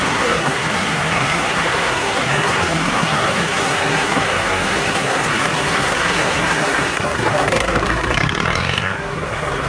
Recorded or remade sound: remade